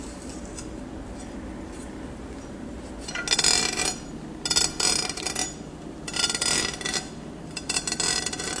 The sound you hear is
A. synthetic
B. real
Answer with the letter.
B